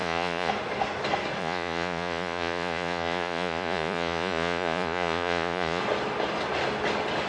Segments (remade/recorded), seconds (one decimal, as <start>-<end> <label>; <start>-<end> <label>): 0.0-0.5 remade; 0.5-1.4 recorded; 1.4-5.8 remade; 5.8-7.3 recorded